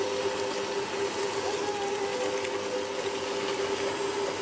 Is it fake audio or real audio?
real